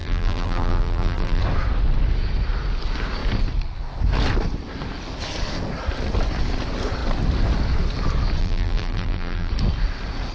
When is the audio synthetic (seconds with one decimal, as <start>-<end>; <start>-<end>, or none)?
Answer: 0.0-1.4; 8.4-9.5